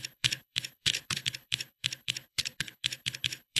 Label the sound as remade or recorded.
remade